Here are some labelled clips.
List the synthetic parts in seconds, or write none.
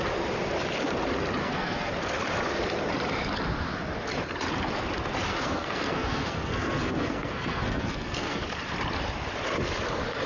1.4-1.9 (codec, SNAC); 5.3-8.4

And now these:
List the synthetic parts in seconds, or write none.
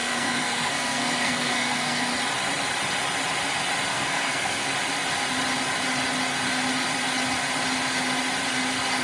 0.0-2.1 (codec, SNAC); 3.9-4.7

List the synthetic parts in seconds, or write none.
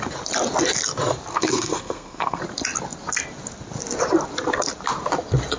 1.3-2.4 (codec, SNAC)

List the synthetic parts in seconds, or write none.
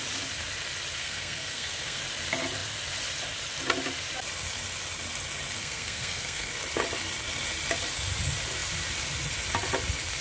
1.0-2.0 (codec, SNAC); 5.6-6.5